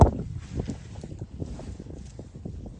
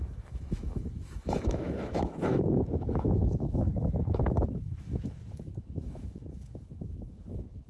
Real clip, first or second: first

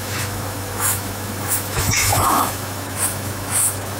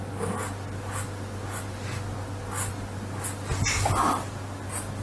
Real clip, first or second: second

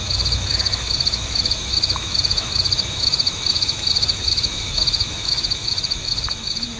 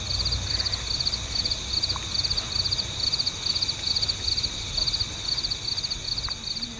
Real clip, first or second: second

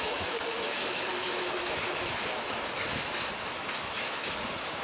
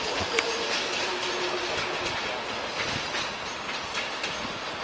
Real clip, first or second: second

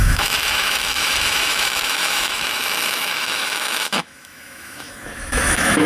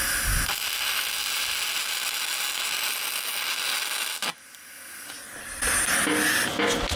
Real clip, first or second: second